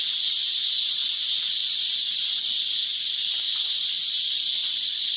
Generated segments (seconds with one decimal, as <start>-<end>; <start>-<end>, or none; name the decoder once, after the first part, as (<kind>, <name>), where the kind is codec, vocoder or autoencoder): 1.6-2.2 (vocoder, Vocos); 4.6-5.2

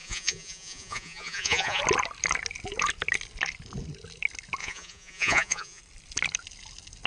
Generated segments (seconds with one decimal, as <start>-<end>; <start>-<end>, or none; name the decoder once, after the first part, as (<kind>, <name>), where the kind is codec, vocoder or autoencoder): 0.0-1.8 (vocoder, Vocos); 4.6-5.8